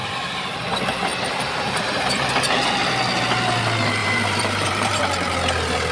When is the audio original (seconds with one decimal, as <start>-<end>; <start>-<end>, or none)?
0.6-1.1; 2.3-4.0; 5.0-5.9